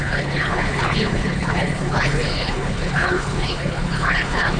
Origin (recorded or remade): remade